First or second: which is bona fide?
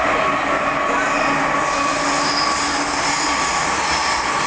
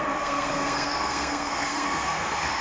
first